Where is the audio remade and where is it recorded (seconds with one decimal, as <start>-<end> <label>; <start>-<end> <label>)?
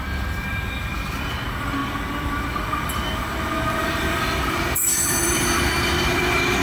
0.0-3.8 recorded; 3.8-5.7 remade; 5.7-6.6 recorded